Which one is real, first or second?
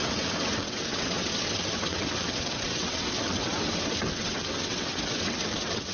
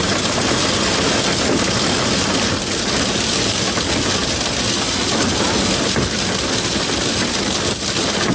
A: second